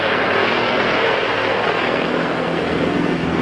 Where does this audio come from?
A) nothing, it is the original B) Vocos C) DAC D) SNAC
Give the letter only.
D